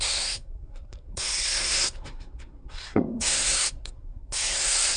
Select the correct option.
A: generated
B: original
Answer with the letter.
A